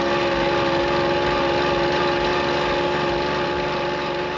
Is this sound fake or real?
real